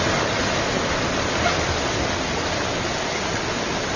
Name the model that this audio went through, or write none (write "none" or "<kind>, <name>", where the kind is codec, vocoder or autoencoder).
none